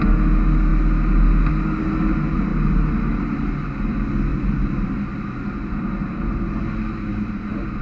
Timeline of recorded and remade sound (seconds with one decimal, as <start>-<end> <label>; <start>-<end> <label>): 0.0-4.3 recorded; 4.3-5.0 remade; 5.0-7.1 recorded; 7.1-7.8 remade